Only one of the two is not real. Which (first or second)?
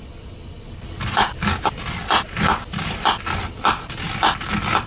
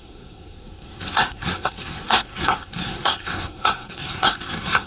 second